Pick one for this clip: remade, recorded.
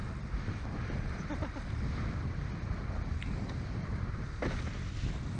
recorded